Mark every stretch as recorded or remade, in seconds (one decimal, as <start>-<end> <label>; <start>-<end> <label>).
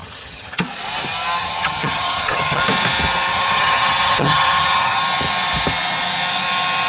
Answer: 0.0-0.6 remade; 0.6-1.4 recorded; 1.4-2.6 remade; 2.6-3.3 recorded; 3.3-5.0 remade; 5.0-6.9 recorded